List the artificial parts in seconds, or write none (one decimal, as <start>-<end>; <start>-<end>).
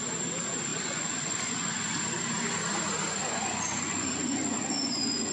0.7-1.9; 3.2-5.3